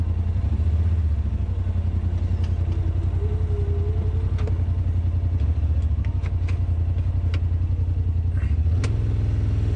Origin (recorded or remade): recorded